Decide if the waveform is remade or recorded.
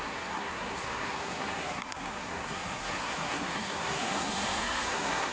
remade